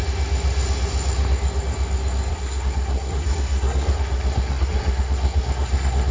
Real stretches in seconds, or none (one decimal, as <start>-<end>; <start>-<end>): 0.0-2.3

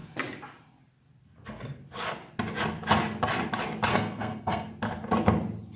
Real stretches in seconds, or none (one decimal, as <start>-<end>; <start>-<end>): 0.0-3.9; 4.7-5.8

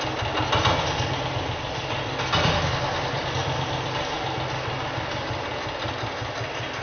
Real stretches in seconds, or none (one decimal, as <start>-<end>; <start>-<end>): 0.0-6.8

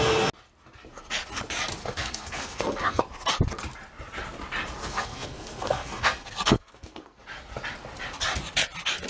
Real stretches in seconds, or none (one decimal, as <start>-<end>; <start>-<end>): 0.0-1.8; 3.0-4.8; 7.2-9.1